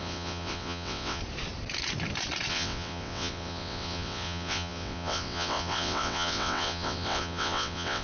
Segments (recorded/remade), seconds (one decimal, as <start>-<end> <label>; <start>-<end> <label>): 0.0-1.2 remade; 1.2-2.5 recorded; 2.5-8.0 remade